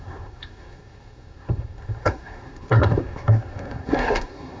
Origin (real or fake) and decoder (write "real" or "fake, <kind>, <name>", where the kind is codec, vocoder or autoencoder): fake, codec, SNAC